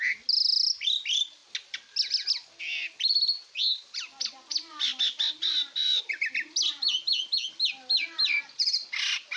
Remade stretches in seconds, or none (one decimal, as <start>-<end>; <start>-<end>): none